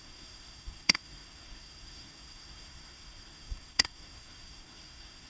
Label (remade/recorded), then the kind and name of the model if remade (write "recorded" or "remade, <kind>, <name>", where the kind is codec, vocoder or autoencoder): remade, codec, SNAC